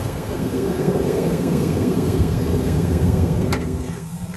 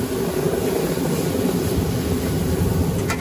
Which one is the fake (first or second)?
first